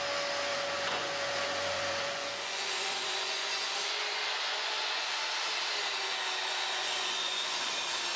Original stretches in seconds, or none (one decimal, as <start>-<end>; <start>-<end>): 0.0-0.5; 5.2-6.4; 7.7-8.2